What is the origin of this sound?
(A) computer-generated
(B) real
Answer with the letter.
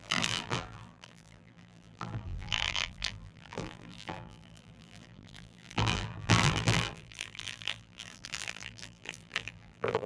A